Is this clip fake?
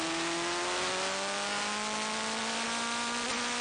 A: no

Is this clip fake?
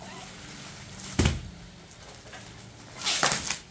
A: no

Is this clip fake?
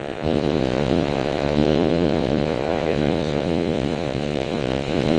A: yes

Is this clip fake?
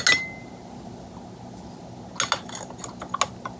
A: no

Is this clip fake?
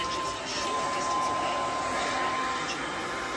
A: no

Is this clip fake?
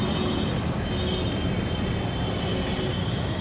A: no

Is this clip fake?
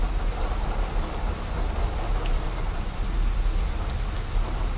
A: no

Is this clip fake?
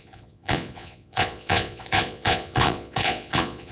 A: yes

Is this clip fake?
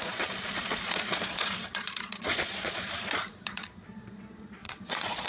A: yes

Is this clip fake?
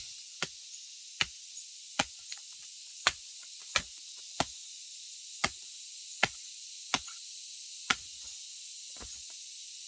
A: yes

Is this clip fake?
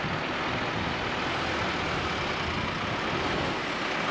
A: no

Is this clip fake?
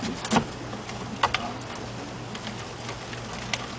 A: no